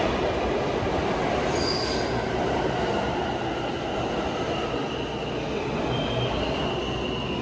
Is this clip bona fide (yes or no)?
yes